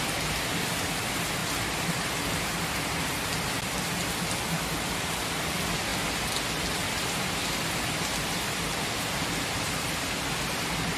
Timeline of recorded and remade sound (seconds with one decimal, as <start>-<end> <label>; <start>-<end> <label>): 0.0-11.0 recorded

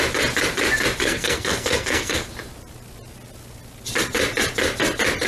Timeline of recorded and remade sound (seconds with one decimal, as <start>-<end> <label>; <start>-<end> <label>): 0.0-1.0 recorded; 1.0-2.3 remade; 2.3-5.3 recorded

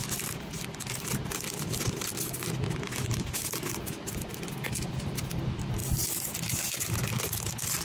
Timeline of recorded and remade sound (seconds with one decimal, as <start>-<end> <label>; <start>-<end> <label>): 0.0-7.8 recorded

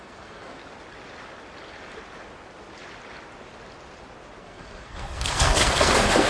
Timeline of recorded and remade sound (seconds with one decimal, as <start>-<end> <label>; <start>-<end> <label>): 0.0-0.6 remade; 0.6-4.4 recorded; 4.4-6.3 remade

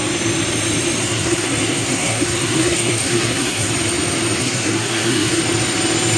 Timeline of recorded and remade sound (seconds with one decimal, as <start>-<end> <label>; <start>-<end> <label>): 0.0-1.0 recorded; 1.0-3.7 remade; 3.7-4.4 recorded; 4.4-5.4 remade; 5.4-6.2 recorded

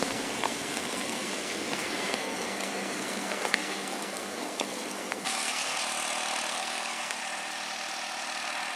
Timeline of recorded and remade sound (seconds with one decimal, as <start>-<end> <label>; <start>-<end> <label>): 0.0-5.8 remade; 5.8-6.5 recorded; 6.5-7.2 remade; 7.2-8.8 recorded

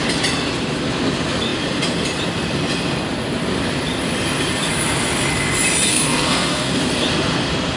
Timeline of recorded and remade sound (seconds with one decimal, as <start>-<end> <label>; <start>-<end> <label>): 0.0-5.9 recorded; 5.9-6.8 remade; 6.8-7.8 recorded

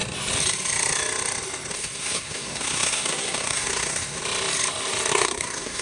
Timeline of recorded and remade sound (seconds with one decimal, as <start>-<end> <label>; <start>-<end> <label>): 0.0-1.7 recorded; 1.7-4.2 remade; 4.2-5.1 recorded; 5.1-5.8 remade